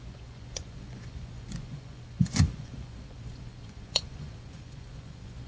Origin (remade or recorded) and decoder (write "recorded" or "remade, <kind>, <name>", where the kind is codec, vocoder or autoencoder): remade, vocoder, Vocos